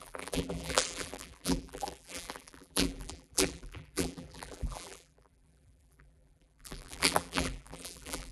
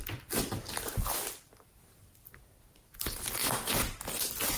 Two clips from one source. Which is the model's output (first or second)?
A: first